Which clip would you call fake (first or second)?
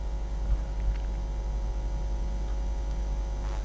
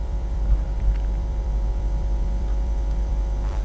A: second